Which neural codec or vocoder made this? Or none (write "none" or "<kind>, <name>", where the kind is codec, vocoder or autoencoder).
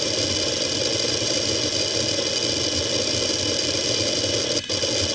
none